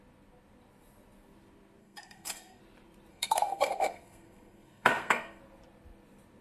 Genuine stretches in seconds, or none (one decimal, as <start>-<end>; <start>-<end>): 0.0-1.8; 2.6-3.1; 5.4-6.4